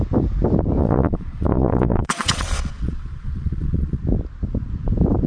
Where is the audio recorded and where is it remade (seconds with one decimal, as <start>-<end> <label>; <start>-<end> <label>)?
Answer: 0.0-0.8 recorded; 0.8-4.0 remade; 4.0-5.3 recorded